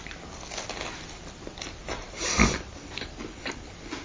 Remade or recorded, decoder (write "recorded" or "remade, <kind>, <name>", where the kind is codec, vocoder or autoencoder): recorded